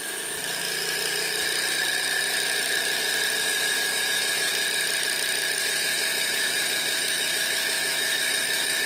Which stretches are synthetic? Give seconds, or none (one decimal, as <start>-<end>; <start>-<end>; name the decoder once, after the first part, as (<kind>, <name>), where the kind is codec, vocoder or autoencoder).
0.0-0.4 (autoencoder, DAC-VAE); 3.4-4.5; 5.6-8.9